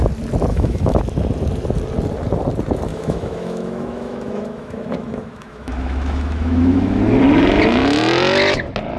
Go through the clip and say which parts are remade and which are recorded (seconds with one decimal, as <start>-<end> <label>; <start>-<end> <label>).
0.0-0.5 recorded; 0.5-1.0 remade; 1.0-2.9 recorded; 2.9-7.0 remade; 7.0-9.0 recorded